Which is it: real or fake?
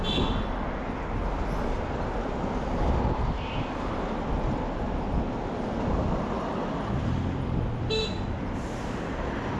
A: real